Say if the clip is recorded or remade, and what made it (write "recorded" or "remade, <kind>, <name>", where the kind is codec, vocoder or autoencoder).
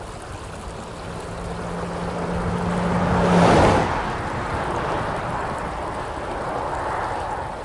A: recorded